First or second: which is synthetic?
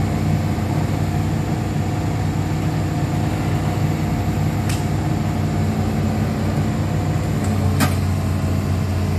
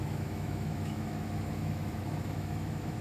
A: second